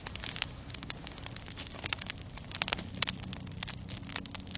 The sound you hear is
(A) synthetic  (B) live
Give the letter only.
B